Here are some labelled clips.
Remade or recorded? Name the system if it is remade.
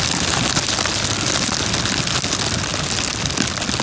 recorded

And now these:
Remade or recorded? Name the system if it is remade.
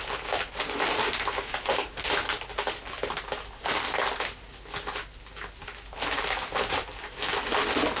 recorded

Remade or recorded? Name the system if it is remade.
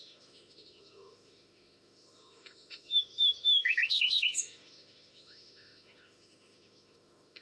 remade, autoencoder, DAC-VAE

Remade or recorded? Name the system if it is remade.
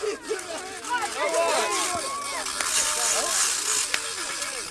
recorded